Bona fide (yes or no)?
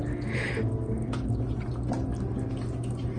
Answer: yes